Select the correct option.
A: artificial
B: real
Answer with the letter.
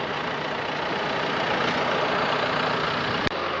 B